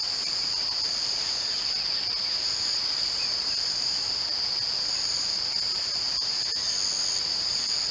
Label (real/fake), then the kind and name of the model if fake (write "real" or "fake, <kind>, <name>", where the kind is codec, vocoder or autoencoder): real